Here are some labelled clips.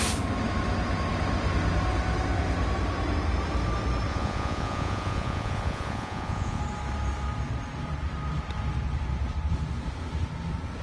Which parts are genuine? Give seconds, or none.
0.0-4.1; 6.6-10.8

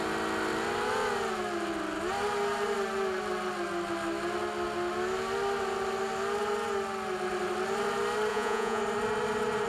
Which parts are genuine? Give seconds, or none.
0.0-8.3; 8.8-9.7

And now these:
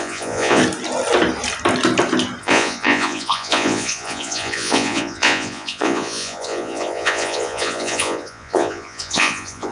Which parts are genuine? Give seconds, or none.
0.6-2.4

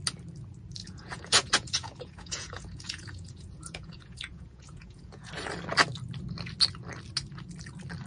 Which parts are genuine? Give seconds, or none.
0.0-0.8; 5.3-8.1

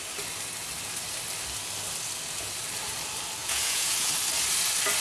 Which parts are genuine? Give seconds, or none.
0.0-3.4; 4.1-5.0

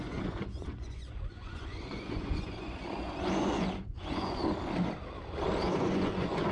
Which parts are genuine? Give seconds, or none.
4.4-5.6